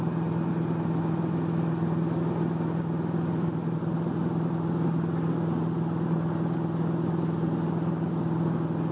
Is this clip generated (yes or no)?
no